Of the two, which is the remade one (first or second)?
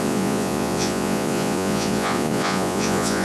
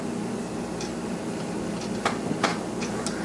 first